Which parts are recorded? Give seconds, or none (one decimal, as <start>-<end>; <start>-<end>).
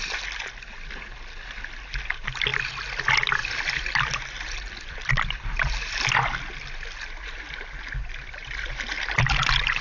0.0-3.4; 6.0-9.8